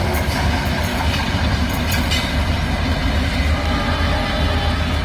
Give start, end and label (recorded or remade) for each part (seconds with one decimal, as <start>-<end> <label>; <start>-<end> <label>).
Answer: 0.0-5.0 recorded